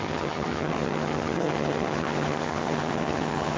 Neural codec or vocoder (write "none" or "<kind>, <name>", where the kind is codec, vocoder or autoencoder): vocoder, HiFi-GAN